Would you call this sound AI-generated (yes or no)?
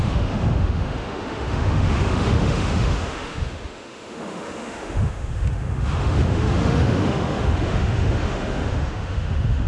yes